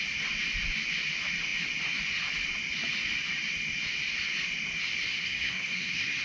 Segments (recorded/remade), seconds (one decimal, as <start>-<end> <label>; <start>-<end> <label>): 0.0-5.1 recorded; 5.1-6.2 remade